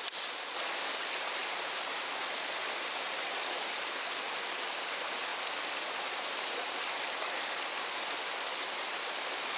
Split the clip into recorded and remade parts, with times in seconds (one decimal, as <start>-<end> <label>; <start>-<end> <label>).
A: 0.0-5.3 remade; 5.3-6.0 recorded; 6.0-9.6 remade

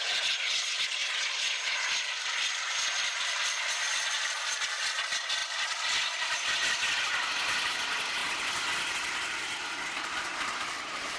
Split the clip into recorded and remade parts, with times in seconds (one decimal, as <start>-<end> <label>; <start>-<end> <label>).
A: 0.0-11.2 recorded

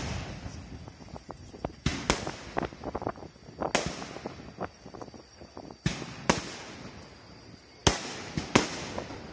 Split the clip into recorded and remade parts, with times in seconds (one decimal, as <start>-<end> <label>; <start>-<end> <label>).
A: 0.0-9.3 recorded

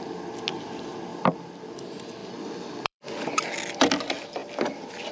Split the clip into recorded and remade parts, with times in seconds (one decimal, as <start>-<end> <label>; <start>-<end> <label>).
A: 0.0-1.1 recorded; 1.1-1.7 remade; 1.7-2.2 recorded; 2.2-3.5 remade; 3.5-5.1 recorded

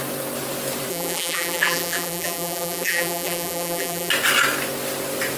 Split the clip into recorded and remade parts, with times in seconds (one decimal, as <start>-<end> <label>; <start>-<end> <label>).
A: 0.0-0.9 recorded; 0.9-4.1 remade; 4.1-5.4 recorded